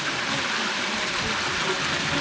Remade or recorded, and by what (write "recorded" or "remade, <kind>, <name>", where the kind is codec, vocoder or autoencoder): recorded